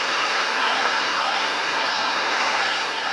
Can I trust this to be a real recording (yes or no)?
no